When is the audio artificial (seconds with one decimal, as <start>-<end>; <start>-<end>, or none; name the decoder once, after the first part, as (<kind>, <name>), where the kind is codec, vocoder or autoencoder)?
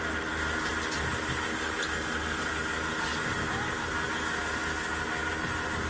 none